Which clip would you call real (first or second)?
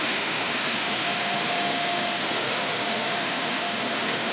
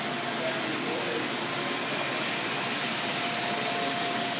second